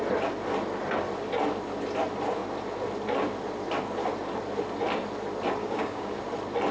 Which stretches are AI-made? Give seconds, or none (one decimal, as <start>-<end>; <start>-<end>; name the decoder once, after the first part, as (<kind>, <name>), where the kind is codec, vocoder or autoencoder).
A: 5.6-6.2 (codec, DAC)